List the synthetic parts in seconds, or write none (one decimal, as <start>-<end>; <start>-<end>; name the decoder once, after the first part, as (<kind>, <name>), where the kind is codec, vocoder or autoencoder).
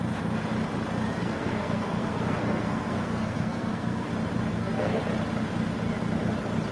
1.2-4.1 (codec, SNAC); 4.5-5.0